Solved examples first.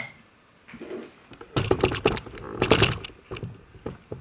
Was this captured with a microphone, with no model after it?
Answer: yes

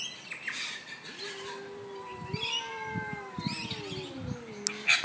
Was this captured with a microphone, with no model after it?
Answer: yes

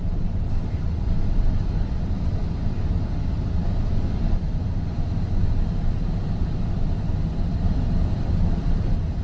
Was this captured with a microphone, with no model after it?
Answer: yes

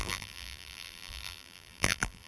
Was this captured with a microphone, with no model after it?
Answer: no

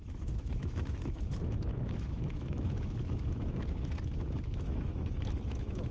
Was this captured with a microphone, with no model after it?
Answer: no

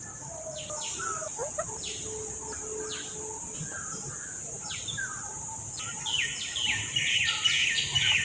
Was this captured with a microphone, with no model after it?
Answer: yes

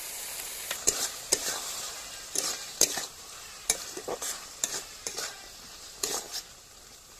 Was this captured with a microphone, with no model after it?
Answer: no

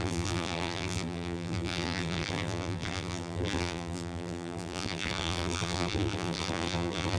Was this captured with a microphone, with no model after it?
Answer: no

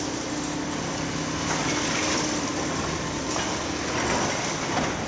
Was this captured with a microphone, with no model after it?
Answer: yes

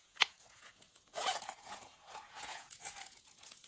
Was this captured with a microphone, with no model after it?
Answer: no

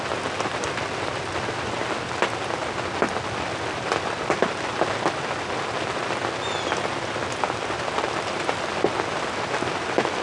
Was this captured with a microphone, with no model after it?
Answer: yes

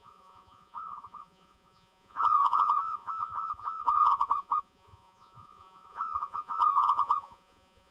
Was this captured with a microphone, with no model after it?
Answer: no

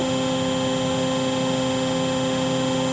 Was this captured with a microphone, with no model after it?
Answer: yes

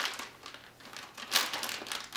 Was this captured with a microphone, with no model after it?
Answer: yes